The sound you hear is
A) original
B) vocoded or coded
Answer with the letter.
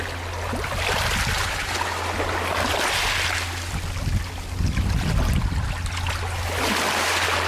A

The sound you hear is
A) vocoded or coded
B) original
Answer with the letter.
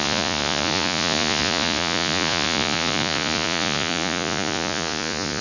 A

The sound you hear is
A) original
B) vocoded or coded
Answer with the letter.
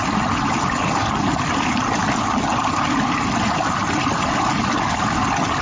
A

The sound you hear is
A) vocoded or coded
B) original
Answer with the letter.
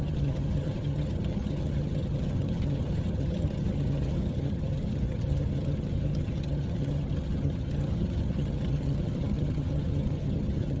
A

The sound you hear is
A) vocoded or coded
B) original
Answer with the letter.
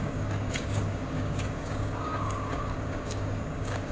A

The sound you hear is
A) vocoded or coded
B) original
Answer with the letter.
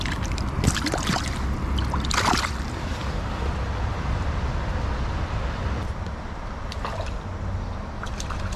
B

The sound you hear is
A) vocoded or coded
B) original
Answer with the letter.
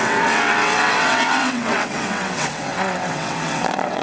A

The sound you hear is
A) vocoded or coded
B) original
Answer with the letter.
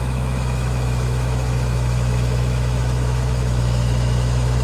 A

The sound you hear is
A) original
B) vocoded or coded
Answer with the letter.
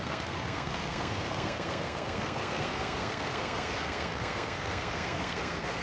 B